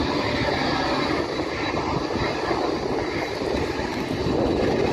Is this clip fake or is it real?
real